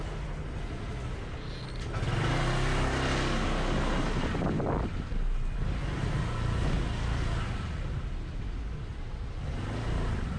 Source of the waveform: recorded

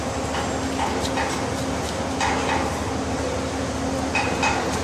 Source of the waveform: recorded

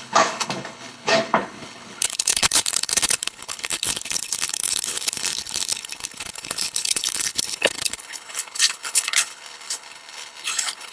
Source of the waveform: remade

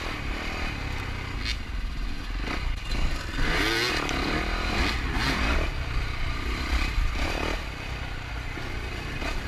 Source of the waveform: recorded